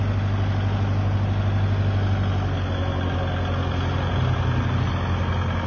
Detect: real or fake real